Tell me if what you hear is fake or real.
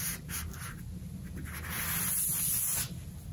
real